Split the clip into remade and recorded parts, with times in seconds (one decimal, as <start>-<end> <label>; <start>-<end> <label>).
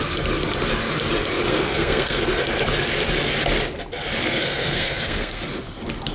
0.0-1.5 recorded; 1.5-2.3 remade; 2.3-4.2 recorded; 4.2-5.4 remade; 5.4-6.1 recorded